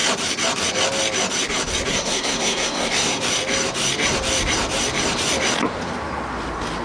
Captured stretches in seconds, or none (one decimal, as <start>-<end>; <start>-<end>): 0.0-1.9; 3.2-6.8